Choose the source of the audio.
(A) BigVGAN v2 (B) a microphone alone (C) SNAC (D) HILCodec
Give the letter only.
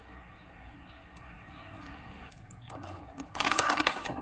C